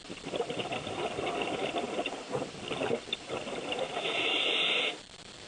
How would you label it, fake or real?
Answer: real